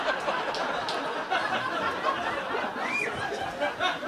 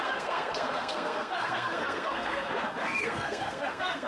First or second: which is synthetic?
second